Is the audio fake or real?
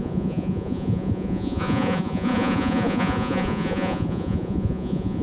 fake